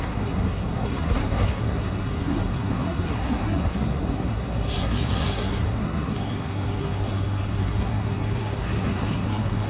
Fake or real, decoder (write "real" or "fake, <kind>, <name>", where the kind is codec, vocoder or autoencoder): fake, codec, SNAC